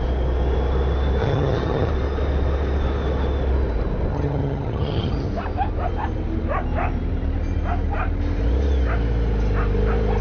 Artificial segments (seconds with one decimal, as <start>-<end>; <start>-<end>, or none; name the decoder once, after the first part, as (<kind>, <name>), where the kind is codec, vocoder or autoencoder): 1.2-1.9 (vocoder, HiFi-GAN); 4.1-5.3

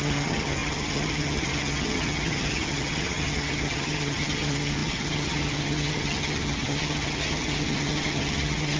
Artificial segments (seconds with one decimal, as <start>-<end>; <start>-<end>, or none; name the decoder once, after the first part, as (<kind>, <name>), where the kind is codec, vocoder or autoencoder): 0.0-8.8 (vocoder, HiFi-GAN)

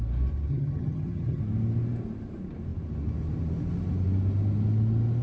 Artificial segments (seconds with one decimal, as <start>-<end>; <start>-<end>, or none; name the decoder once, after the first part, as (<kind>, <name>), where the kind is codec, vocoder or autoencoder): 0.5-1.4 (vocoder, HiFi-GAN)

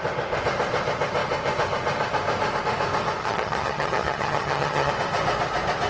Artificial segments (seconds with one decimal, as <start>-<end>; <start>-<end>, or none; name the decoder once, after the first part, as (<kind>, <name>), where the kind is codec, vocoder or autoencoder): 3.2-4.9 (vocoder, HiFi-GAN)

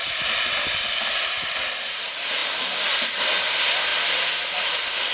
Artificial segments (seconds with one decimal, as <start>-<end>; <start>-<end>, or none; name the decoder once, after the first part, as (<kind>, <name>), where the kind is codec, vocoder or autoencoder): none

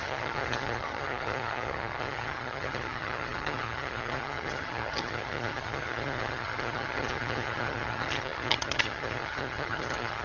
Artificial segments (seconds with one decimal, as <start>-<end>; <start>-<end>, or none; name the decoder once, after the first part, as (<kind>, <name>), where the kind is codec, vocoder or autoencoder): 0.0-10.2 (vocoder, HiFi-GAN)

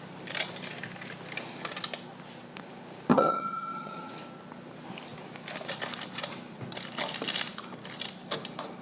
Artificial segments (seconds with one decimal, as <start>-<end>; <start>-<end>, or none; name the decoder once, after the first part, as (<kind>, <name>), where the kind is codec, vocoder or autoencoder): 3.1-4.1 (vocoder, HiFi-GAN)